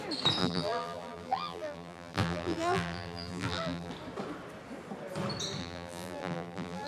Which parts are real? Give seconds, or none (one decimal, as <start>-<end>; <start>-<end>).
0.0-0.4; 3.9-5.6